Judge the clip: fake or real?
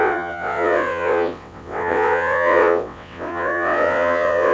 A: fake